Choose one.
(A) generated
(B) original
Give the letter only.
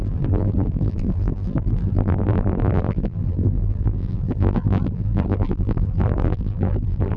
A